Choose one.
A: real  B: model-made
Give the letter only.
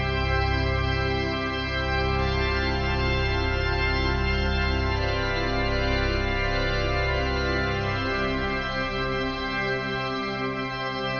A